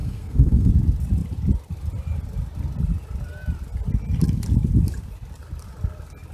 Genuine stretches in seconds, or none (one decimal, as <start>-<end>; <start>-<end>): 0.7-6.3